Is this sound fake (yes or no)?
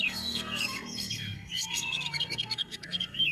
yes